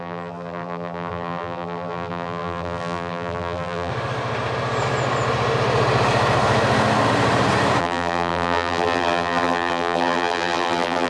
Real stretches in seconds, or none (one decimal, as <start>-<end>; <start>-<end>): 3.9-7.8